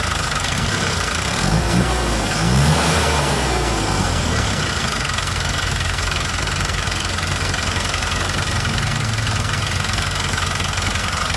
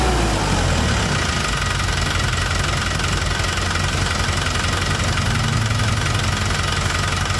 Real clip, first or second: second